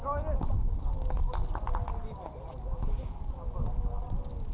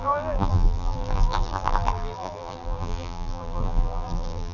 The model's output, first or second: second